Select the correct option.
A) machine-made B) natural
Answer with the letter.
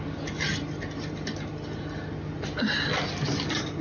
B